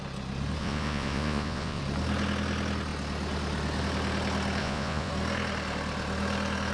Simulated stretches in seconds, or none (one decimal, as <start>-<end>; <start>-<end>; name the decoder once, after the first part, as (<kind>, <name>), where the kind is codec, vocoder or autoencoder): 0.6-1.8 (vocoder, Vocos); 4.6-5.1